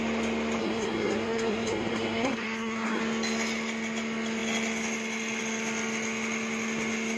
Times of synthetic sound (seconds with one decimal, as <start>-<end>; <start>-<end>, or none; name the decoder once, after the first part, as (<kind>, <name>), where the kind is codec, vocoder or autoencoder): 0.6-3.0 (codec, SNAC)